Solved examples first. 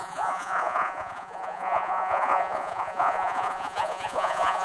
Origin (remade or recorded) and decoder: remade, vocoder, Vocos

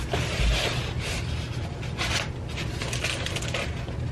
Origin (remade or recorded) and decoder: recorded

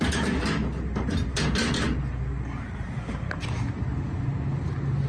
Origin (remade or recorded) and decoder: recorded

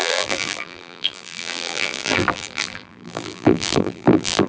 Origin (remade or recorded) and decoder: remade, vocoder, BigVGAN v2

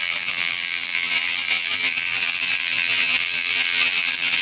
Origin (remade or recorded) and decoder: remade, vocoder, BigVGAN v2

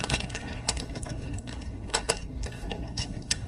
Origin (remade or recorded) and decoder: remade, codec, SNAC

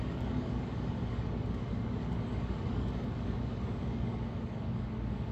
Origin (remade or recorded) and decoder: remade, codec, DAC